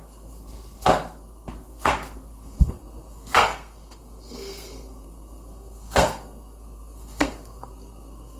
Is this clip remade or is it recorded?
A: remade